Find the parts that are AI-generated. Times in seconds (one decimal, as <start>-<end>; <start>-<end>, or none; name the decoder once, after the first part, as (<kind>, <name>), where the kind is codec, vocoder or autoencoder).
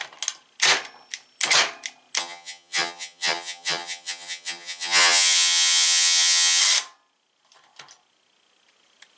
2.2-6.6 (vocoder, HiFi-GAN)